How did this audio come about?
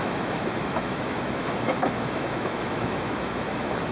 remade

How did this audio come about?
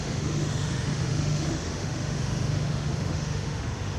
remade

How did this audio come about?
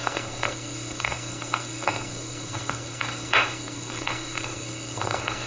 remade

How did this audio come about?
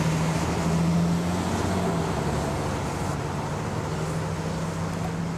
recorded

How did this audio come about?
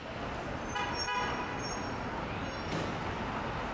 recorded